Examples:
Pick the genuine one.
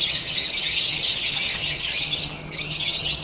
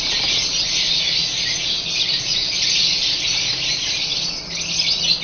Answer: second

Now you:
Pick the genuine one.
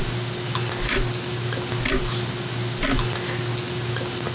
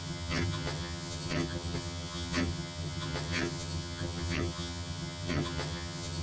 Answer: first